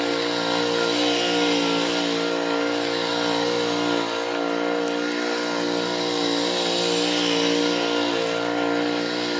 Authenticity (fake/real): real